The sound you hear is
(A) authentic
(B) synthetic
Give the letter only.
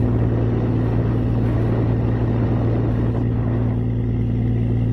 A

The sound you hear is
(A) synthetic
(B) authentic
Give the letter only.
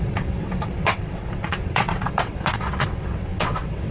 A